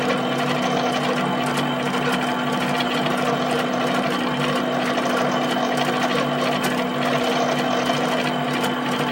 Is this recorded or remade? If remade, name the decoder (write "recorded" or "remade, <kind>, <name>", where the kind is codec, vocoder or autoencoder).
recorded